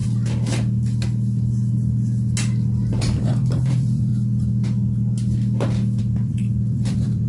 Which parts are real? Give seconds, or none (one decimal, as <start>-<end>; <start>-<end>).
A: 0.0-2.9; 4.1-6.0